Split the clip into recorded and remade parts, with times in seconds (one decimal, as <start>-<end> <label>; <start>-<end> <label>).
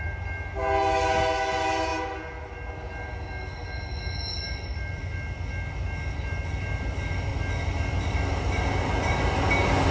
0.0-4.4 recorded; 4.4-5.1 remade; 5.1-7.3 recorded; 7.3-9.4 remade; 9.4-9.9 recorded